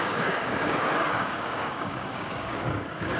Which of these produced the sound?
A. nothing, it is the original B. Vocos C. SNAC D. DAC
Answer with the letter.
D